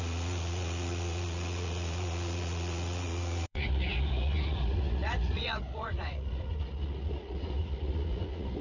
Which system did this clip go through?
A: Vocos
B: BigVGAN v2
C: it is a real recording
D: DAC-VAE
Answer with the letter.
A